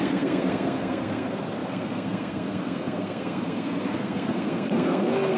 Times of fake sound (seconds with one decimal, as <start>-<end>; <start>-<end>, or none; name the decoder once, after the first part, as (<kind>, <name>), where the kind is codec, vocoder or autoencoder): 0.0-5.4 (codec, SNAC)